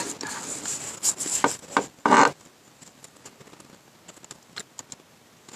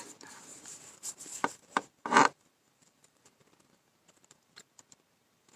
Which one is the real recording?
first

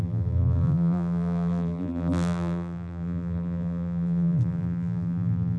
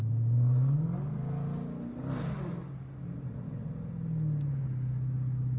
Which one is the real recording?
second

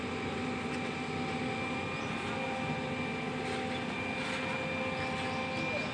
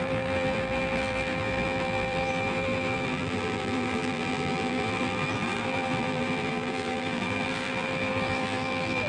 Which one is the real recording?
first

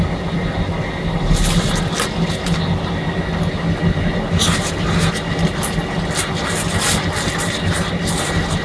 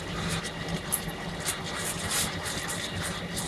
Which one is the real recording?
first